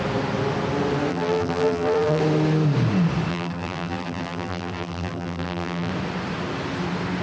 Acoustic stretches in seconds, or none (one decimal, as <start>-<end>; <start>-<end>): 0.0-1.1; 2.2-3.3; 5.9-7.2

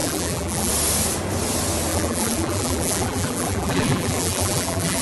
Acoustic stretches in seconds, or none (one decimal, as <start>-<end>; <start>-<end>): 0.7-1.9

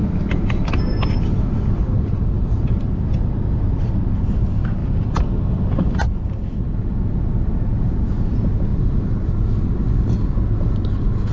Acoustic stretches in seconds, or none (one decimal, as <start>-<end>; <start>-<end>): 3.9-4.8; 5.6-8.7; 9.3-11.3

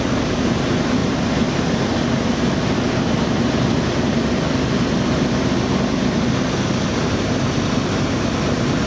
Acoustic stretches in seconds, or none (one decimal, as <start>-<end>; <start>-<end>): 0.0-8.9

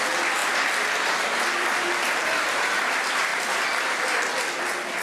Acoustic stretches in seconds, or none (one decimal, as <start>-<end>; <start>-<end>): 0.0-5.0